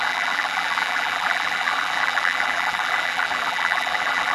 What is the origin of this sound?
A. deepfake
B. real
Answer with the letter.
A